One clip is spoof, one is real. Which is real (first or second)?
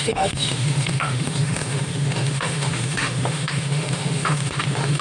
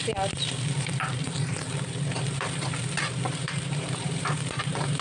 second